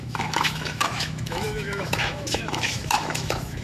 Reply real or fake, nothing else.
fake